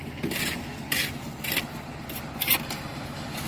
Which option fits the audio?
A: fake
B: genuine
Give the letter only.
B